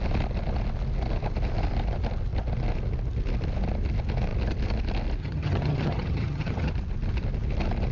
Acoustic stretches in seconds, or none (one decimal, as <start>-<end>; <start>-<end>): 0.0-5.2; 6.7-7.9